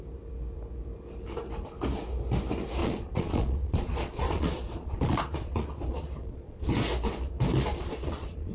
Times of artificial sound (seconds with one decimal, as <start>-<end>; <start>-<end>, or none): 2.8-6.7; 7.7-8.5